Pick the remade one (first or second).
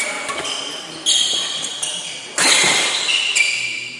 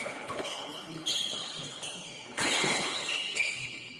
second